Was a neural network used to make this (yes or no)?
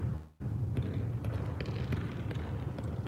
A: no